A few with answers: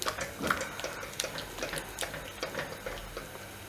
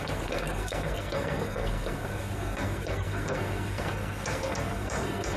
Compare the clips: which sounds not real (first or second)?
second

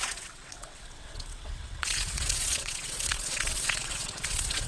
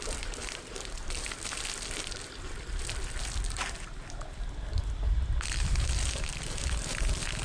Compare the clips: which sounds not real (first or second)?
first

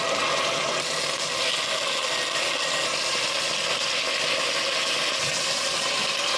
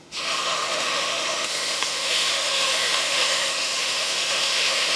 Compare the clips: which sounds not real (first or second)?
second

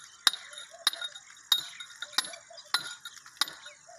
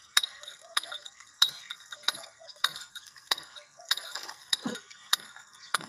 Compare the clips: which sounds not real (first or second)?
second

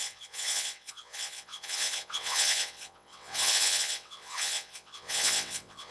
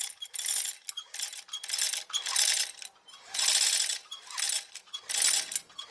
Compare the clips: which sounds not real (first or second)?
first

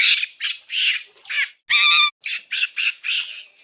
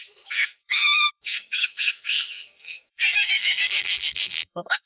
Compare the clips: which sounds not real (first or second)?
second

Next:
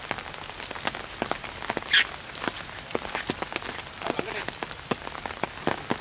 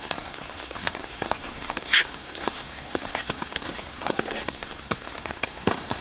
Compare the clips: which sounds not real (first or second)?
second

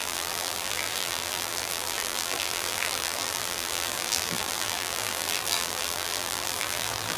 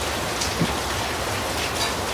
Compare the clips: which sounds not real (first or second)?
first